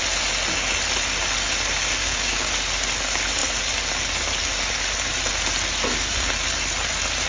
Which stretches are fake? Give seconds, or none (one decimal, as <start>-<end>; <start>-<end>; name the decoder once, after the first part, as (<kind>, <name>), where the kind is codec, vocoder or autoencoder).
2.0-2.5 (codec, DAC)